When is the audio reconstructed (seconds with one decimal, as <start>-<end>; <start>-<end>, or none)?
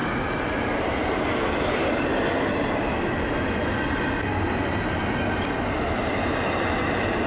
none